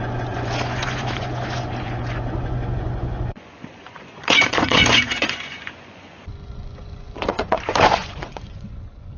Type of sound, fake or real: fake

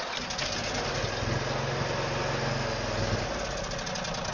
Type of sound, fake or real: real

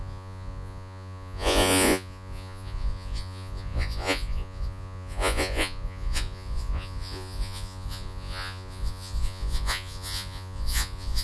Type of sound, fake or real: fake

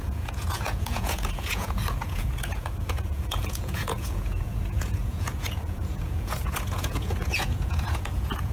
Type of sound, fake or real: fake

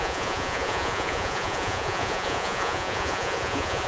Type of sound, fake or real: fake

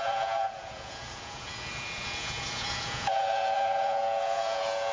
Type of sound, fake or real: fake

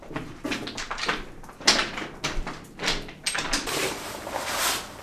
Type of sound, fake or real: real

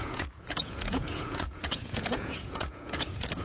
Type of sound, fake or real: fake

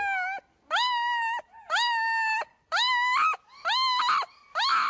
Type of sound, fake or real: real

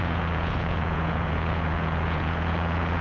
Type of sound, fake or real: fake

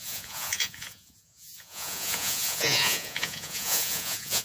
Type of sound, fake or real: fake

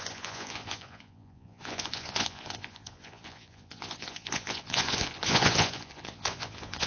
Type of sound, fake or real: fake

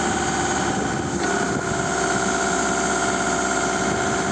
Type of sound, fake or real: real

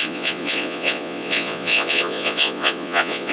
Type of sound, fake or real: fake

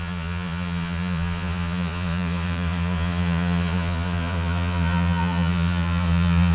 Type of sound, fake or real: fake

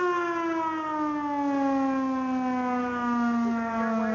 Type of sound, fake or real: real